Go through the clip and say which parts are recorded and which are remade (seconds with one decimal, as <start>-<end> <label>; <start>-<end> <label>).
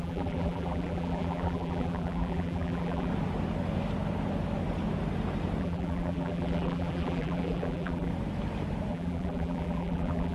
0.0-3.1 remade; 3.1-5.6 recorded; 5.6-8.1 remade; 8.1-8.9 recorded; 8.9-10.3 remade